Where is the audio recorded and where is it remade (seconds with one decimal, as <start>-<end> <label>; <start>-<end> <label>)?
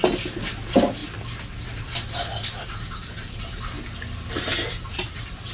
0.0-5.5 recorded